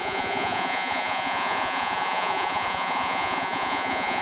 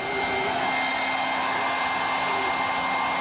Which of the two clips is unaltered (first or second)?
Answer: second